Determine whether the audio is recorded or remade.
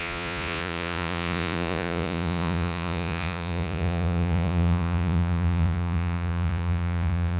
remade